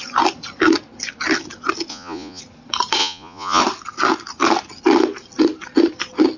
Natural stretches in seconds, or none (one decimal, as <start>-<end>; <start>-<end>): 0.0-1.9; 2.4-3.0; 3.6-6.4

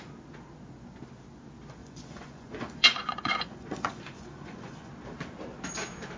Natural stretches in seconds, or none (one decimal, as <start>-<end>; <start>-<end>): 0.0-1.8; 4.9-6.2

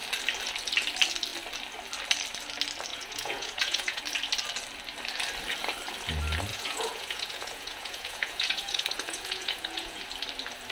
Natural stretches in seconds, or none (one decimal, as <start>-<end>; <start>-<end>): 0.0-2.9; 4.0-6.5; 10.0-10.7

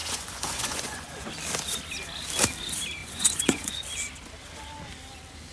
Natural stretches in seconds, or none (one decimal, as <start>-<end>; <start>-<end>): 1.3-3.0; 3.8-5.5

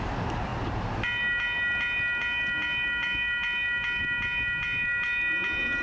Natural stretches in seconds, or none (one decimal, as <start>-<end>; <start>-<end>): 0.0-5.8

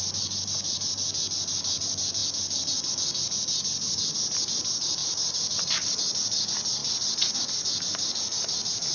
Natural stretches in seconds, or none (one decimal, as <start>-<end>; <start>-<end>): 0.0-8.9

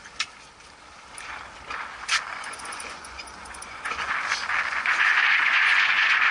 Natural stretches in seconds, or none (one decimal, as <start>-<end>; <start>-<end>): 0.0-2.3; 4.1-4.7